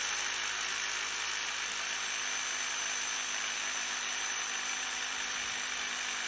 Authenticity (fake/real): fake